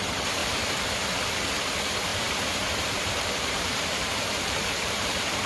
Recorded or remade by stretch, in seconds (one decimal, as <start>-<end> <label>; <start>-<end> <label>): 0.0-0.4 recorded; 0.4-0.9 remade; 0.9-2.1 recorded; 2.1-5.1 remade; 5.1-5.5 recorded